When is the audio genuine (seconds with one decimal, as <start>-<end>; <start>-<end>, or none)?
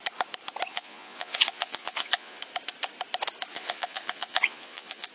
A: 0.0-0.7; 2.4-3.5